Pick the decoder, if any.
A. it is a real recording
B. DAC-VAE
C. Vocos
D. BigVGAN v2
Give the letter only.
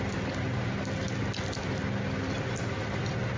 A